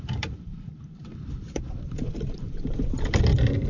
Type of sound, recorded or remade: remade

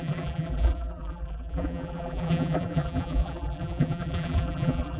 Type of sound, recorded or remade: remade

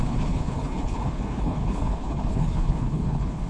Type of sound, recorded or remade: remade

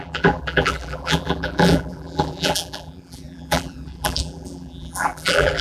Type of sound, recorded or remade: remade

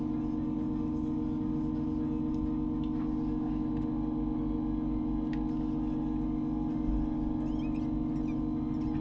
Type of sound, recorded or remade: recorded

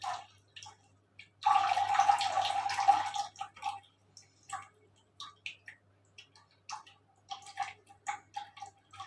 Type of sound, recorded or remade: recorded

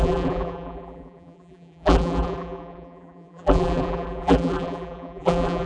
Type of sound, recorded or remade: remade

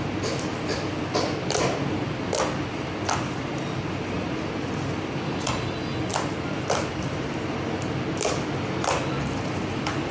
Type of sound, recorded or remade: recorded